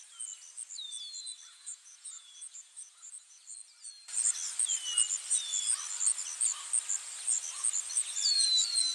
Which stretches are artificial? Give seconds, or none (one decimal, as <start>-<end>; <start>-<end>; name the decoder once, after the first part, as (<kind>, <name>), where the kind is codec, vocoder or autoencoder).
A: 1.5-3.4 (vocoder, Vocos)